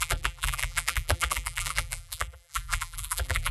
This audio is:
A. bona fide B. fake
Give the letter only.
B